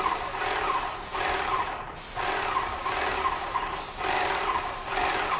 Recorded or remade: recorded